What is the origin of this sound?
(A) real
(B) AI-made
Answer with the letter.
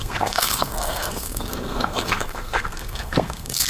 B